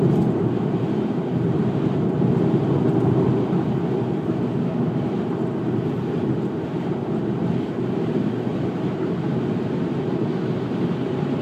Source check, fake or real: real